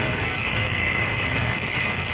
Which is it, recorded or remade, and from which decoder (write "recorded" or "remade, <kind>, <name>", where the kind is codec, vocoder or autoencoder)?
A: remade, codec, SNAC